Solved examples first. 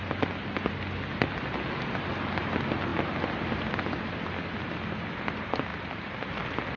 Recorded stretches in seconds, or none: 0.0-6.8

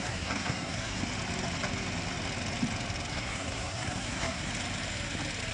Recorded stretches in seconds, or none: 1.0-3.1; 4.5-5.5

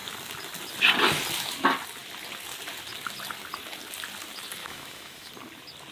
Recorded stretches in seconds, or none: 0.0-4.6; 5.3-5.9

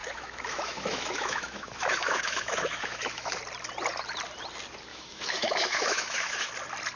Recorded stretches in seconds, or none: 3.4-4.9; 6.5-7.0